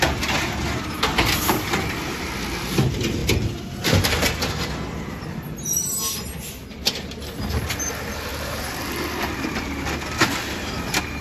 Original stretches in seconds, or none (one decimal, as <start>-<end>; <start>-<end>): 0.0-8.3; 8.8-11.2